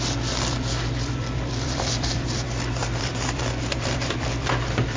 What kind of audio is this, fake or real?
fake